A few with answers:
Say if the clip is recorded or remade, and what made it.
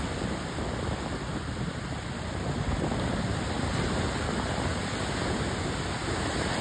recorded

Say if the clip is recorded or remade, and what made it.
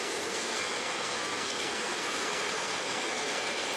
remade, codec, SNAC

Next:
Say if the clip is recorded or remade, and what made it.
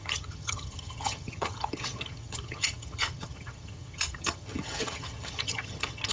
remade, vocoder, HiFi-GAN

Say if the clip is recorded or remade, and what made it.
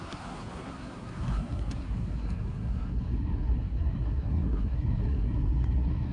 remade, codec, SNAC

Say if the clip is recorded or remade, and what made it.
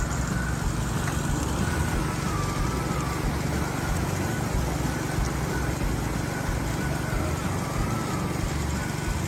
recorded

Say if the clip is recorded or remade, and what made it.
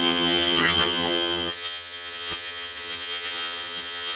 remade, vocoder, HiFi-GAN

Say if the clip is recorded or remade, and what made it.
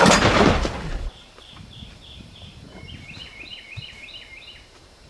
remade, vocoder, BigVGAN v2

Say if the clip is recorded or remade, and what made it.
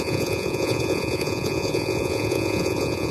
remade, vocoder, Vocos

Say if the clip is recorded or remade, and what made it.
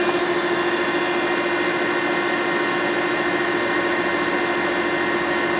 recorded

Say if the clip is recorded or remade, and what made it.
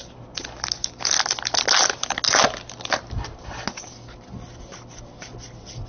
recorded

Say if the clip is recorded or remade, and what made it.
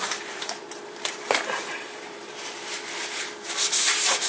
remade, vocoder, BigVGAN v2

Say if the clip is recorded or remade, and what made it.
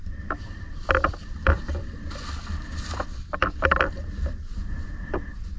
remade, vocoder, BigVGAN v2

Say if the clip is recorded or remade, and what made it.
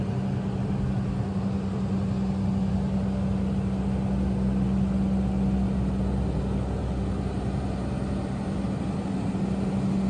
recorded